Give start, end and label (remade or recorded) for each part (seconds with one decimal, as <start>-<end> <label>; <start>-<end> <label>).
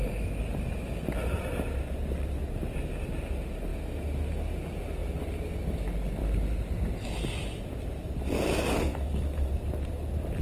0.0-8.5 recorded; 8.5-9.5 remade; 9.5-10.4 recorded